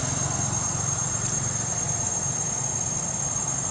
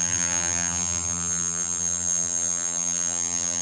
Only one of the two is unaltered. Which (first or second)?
first